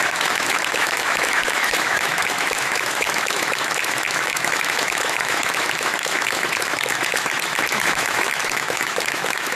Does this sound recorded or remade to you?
remade